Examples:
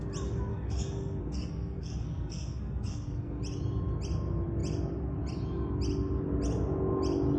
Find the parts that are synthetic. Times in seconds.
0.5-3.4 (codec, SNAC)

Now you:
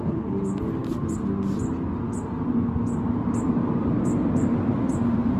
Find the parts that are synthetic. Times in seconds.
none

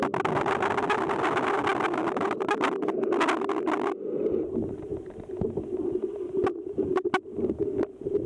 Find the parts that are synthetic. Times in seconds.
none

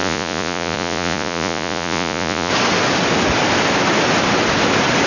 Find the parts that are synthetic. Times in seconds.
0.0-2.5 (vocoder, Vocos)

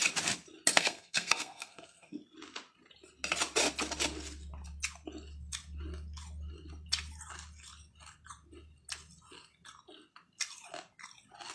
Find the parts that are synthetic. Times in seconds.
0.7-2.2 (codec, SNAC)

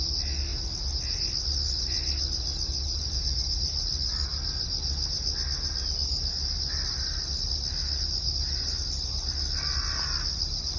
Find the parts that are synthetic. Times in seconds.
none

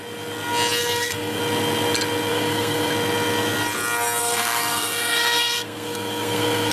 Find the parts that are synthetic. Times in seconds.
0.8-1.4 (codec, SNAC); 2.3-2.9; 4.2-6.7